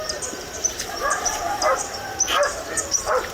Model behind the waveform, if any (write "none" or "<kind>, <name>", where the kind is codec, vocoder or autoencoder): vocoder, BigVGAN v2